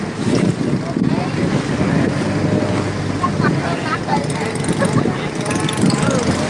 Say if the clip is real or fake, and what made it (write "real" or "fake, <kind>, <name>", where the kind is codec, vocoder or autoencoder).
real